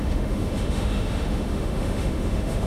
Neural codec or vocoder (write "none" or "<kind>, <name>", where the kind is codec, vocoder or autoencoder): autoencoder, DAC-VAE